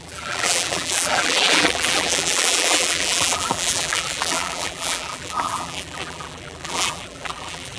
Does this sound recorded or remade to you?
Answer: remade